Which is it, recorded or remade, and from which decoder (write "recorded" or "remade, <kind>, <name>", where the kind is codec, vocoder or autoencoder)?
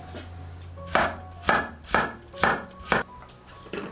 recorded